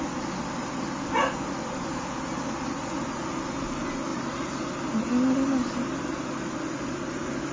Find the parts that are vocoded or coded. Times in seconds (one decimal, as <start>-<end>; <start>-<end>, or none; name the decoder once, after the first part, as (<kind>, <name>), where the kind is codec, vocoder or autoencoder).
none